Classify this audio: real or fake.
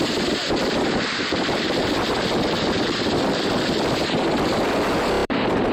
fake